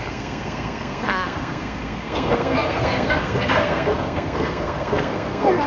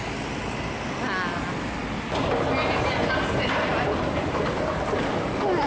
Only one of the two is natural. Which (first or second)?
second